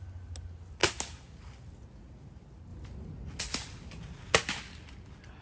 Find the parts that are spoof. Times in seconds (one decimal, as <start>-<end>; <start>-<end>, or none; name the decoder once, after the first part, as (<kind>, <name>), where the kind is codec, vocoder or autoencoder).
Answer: none